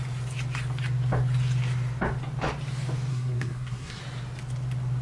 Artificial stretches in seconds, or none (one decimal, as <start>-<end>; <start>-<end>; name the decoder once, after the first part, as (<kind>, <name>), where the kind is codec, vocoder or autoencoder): 3.1-4.0 (codec, SNAC)